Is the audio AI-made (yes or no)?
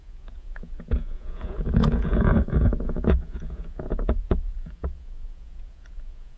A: yes